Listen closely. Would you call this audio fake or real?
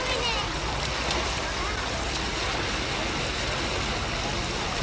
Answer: real